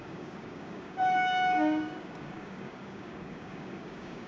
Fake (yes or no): yes